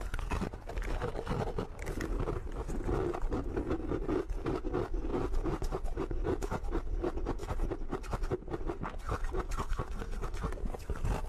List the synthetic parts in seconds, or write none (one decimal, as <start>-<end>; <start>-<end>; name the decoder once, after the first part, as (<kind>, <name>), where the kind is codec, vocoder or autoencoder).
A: none

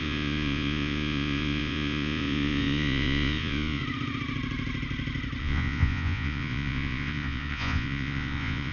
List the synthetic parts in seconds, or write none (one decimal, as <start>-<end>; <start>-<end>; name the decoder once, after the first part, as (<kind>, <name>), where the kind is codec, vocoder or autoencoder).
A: 0.0-3.8 (vocoder, Vocos); 5.4-8.7

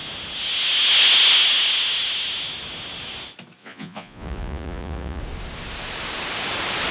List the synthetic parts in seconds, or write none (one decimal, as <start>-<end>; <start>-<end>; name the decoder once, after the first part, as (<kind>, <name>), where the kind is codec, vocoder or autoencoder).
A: 3.6-5.2 (vocoder, Vocos)

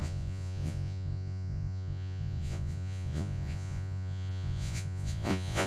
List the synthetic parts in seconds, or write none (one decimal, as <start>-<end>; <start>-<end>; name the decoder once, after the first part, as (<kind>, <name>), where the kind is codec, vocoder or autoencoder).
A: 0.0-5.7 (vocoder, Vocos)

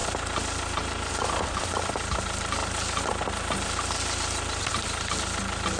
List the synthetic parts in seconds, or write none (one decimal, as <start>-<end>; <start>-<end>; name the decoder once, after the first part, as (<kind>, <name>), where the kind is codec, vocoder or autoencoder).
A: none

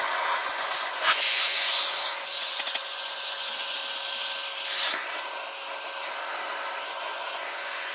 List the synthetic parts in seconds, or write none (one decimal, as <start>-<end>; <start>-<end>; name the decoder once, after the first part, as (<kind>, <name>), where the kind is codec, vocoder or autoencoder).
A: 0.0-3.8 (vocoder, Vocos); 6.8-7.9